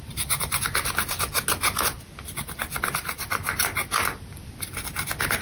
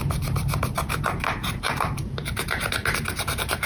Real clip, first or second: first